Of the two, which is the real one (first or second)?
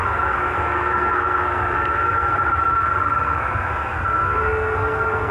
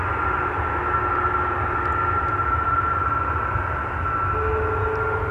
second